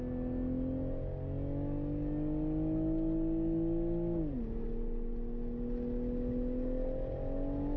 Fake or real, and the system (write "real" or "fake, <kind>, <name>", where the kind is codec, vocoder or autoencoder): real